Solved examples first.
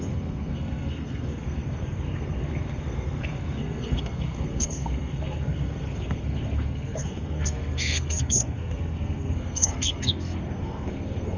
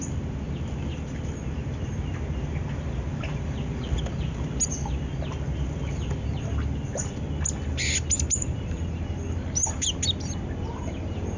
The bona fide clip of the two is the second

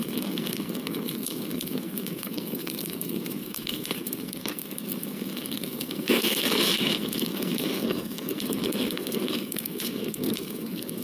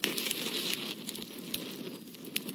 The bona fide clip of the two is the second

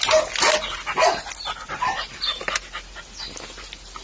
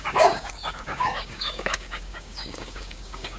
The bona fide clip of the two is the first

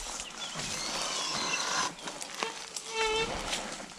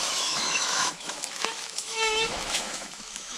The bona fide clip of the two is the first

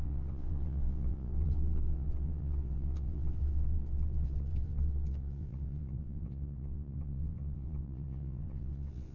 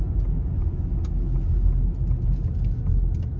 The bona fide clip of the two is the second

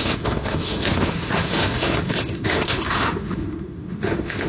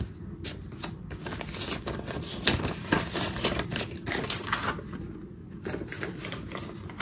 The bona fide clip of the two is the second